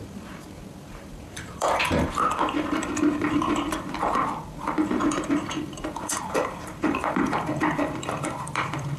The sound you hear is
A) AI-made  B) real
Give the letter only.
A